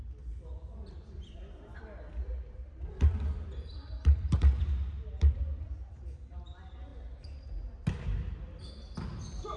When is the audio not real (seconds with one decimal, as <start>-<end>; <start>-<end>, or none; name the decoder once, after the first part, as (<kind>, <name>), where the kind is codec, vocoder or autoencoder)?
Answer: none